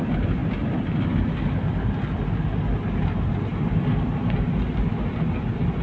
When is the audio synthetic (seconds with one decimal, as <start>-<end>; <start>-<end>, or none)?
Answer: none